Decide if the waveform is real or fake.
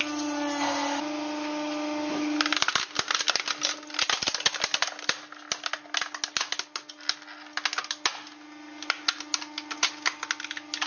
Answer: real